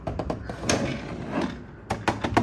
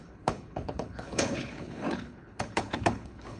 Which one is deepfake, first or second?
second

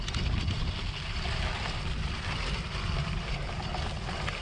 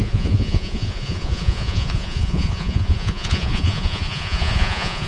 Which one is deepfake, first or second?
second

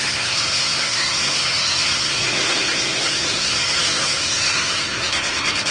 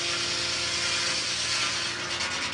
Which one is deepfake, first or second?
first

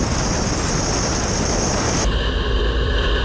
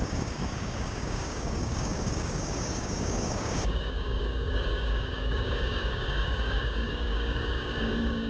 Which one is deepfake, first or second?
second